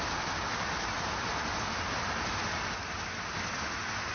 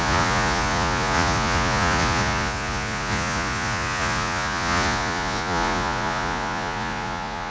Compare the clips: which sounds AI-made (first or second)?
second